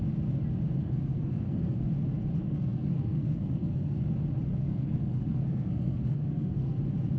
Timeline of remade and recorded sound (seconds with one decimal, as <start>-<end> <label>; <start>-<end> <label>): 0.0-0.8 recorded; 0.8-1.9 remade; 1.9-2.4 recorded; 2.4-4.1 remade; 4.1-4.5 recorded; 4.5-6.8 remade; 6.8-7.2 recorded